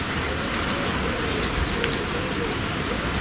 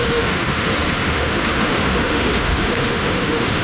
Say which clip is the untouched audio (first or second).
first